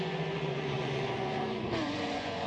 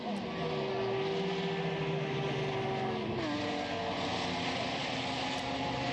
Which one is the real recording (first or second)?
second